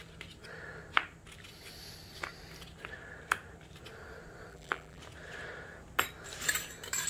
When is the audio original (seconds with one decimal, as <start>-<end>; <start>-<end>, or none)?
0.0-4.5; 5.0-7.1